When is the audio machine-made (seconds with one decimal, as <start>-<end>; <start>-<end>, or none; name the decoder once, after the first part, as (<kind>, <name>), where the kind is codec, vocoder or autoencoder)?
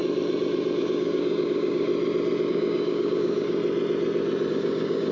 0.8-1.9 (codec, DAC); 2.5-3.6; 4.5-5.1